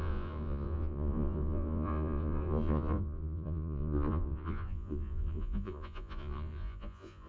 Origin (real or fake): fake